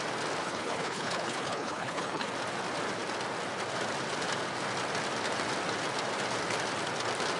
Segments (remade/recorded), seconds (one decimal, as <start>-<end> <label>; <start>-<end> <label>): 0.0-0.4 recorded; 0.4-2.3 remade; 2.3-7.4 recorded